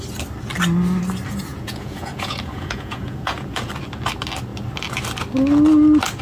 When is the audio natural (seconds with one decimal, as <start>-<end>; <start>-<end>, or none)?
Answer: 0.0-1.5; 3.7-6.2